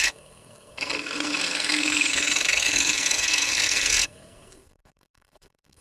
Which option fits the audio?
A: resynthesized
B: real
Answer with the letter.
A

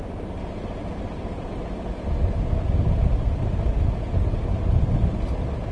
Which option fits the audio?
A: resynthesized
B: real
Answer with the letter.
B